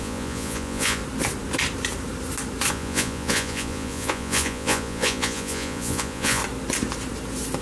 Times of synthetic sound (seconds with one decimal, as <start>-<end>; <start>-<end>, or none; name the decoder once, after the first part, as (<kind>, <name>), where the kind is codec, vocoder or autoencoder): 0.0-1.0 (vocoder, Vocos); 2.7-6.4